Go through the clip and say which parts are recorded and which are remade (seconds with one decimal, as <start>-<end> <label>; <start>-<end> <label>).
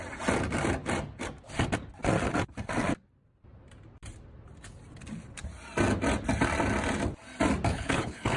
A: 0.0-7.7 recorded; 7.7-8.4 remade